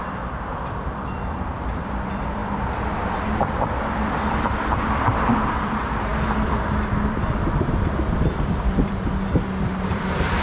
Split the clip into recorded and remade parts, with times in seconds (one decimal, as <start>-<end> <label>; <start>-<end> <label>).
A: 0.0-10.4 remade